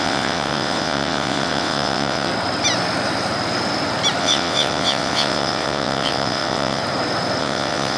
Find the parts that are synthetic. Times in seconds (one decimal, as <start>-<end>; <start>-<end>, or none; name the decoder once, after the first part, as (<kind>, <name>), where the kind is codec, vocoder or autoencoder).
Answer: 0.0-2.3 (vocoder, WaveNeXt); 4.2-6.8; 7.4-8.0